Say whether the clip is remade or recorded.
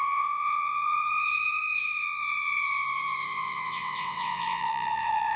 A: remade